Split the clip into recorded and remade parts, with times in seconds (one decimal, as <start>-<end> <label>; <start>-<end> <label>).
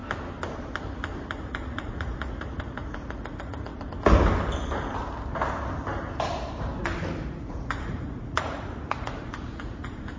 0.0-1.4 recorded; 1.4-3.7 remade; 3.7-7.2 recorded; 7.2-10.2 remade